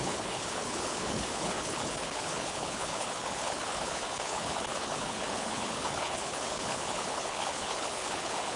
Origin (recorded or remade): remade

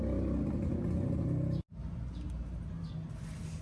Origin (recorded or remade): recorded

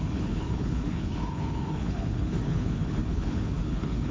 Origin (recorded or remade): remade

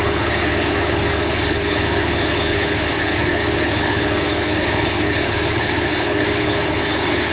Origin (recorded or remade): remade